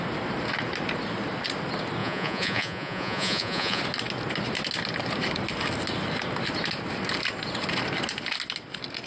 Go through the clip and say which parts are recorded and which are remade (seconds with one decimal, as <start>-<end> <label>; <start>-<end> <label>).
0.0-2.0 recorded; 2.0-3.8 remade; 3.8-9.1 recorded